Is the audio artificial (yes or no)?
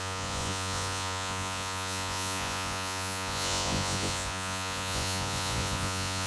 yes